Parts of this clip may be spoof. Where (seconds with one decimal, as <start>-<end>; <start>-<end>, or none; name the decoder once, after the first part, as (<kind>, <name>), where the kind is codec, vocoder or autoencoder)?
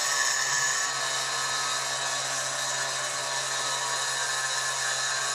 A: none